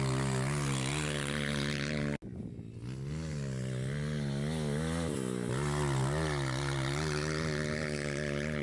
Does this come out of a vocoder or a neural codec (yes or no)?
no